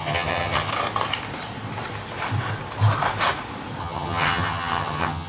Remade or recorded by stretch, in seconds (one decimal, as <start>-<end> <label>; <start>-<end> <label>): 0.0-0.7 remade; 0.7-3.8 recorded; 3.8-5.3 remade